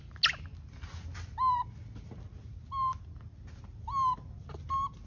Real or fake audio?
real